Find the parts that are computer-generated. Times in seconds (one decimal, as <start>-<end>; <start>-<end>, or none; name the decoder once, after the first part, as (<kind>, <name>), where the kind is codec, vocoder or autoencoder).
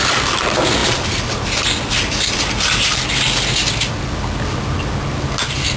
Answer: none